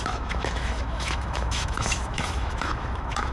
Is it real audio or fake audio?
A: fake